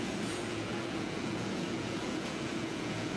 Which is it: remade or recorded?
remade